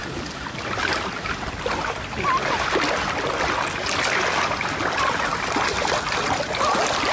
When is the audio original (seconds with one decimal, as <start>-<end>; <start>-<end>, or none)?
0.0-7.1